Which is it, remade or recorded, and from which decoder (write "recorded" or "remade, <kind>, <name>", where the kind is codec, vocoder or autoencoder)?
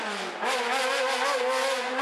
recorded